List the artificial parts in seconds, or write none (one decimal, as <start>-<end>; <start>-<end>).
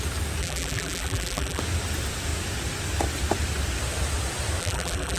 0.4-1.6; 4.6-5.2